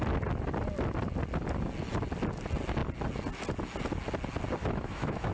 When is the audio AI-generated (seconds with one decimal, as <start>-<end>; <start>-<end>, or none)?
4.6-5.3